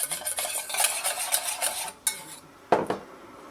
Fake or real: real